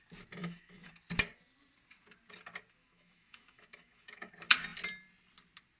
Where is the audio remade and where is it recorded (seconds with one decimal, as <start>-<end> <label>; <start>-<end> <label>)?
0.0-0.4 recorded; 0.4-0.9 remade; 0.9-2.8 recorded; 2.8-4.3 remade; 4.3-5.8 recorded